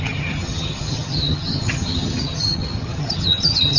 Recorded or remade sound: remade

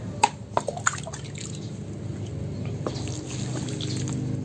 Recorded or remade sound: recorded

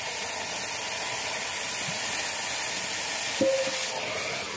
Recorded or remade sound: recorded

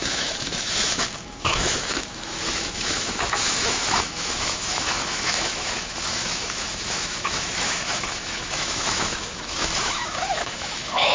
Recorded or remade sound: remade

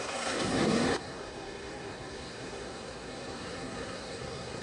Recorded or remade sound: remade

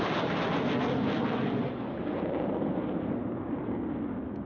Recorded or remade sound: recorded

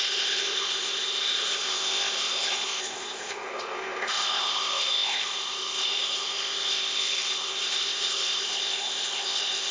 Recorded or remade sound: remade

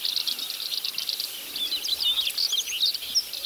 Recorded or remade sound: recorded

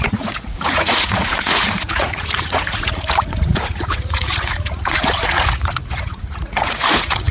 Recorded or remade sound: remade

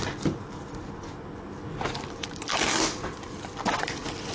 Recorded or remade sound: recorded